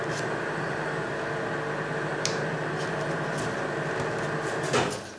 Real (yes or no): yes